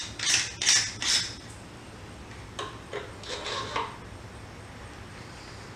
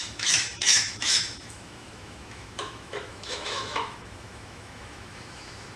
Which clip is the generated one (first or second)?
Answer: second